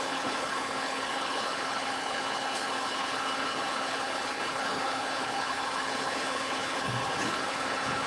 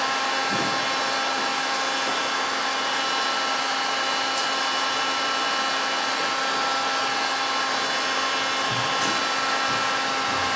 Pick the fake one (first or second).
first